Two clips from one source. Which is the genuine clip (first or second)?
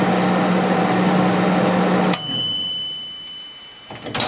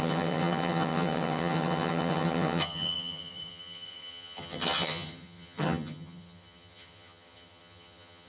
first